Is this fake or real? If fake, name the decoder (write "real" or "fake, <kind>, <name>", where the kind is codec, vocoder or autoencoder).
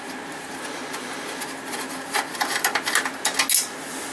real